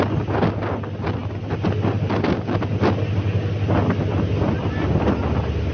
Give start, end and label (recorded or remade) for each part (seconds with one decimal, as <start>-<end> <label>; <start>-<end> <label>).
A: 0.0-5.7 recorded